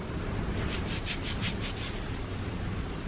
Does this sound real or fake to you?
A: real